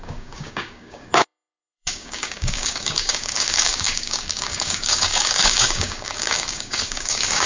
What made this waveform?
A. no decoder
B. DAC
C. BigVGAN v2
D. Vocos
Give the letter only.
B